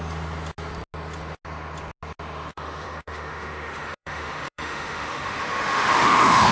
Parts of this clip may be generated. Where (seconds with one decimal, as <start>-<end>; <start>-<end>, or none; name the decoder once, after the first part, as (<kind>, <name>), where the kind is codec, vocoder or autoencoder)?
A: 2.5-6.5 (autoencoder, DAC-VAE)